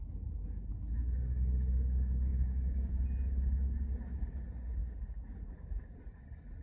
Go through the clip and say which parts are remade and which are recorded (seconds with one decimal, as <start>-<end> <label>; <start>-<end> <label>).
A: 0.0-2.3 recorded; 2.3-3.0 remade; 3.0-6.6 recorded